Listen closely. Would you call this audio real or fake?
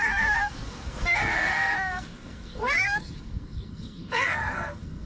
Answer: fake